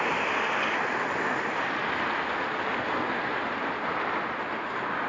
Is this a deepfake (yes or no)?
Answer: no